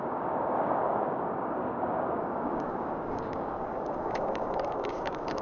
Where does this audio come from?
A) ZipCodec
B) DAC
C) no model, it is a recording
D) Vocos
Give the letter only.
B